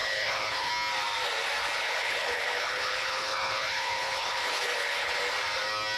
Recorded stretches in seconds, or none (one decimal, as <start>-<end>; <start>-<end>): 0.7-1.6; 5.2-6.0